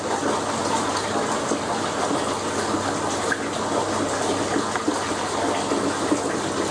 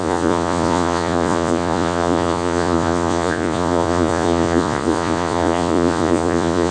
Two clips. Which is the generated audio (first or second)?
second